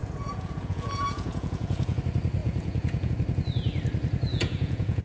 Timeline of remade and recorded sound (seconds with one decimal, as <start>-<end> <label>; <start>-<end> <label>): 0.0-2.0 remade; 2.0-2.4 recorded; 2.4-3.1 remade; 3.1-4.3 recorded; 4.3-5.0 remade

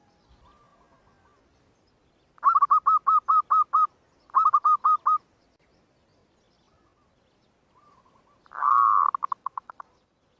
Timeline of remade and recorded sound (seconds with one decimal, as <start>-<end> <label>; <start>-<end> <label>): 0.0-9.4 recorded; 9.4-10.4 remade